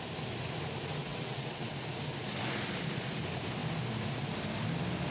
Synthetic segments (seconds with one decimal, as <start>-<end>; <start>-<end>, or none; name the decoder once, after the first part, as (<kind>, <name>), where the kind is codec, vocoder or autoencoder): 1.0-1.7 (vocoder, WaveNeXt)